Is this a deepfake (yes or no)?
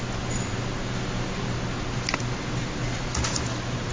no